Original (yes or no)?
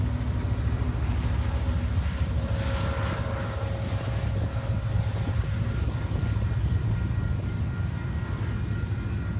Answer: yes